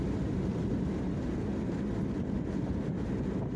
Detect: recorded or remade recorded